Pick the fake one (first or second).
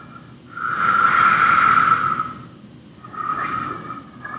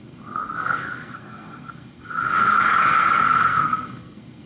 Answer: second